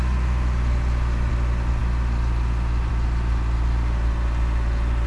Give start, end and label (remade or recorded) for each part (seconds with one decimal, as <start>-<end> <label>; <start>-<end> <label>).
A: 0.0-5.1 recorded